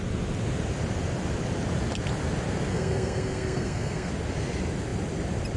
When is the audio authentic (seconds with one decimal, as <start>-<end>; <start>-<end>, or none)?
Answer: 0.0-2.7; 4.1-5.6